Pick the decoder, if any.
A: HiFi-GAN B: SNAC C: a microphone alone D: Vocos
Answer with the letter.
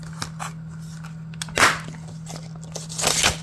C